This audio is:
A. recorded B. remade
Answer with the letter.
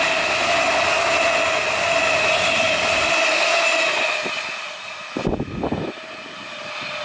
A